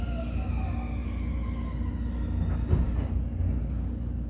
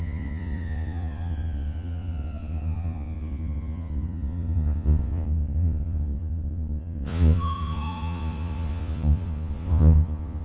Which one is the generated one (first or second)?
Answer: second